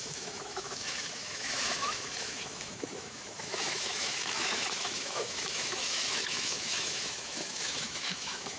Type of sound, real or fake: fake